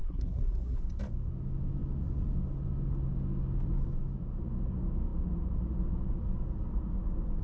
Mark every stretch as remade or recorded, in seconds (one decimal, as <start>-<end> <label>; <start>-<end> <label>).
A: 0.0-0.8 remade; 0.8-7.4 recorded